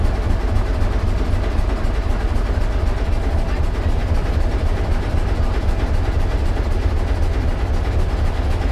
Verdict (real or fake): real